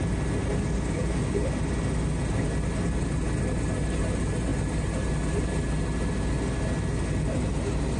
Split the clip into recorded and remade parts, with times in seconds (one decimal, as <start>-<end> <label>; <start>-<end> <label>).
0.0-8.0 recorded